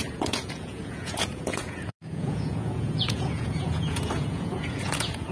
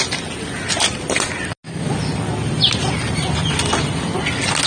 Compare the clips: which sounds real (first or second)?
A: second